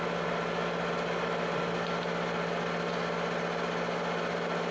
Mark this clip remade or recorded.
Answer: recorded